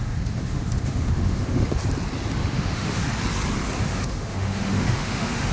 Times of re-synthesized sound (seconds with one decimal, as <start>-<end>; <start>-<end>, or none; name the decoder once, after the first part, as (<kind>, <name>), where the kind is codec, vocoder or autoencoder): 0.0-1.8 (autoencoder, DAC-VAE); 2.3-3.0; 3.8-5.5